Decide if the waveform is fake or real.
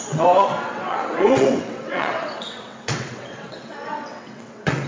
fake